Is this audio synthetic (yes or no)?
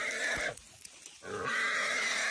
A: no